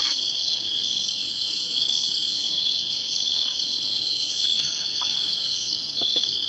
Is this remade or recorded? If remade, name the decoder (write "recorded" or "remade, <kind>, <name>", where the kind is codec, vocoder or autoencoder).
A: remade, codec, SNAC